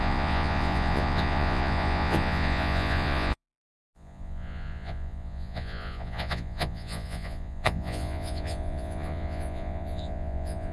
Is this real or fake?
fake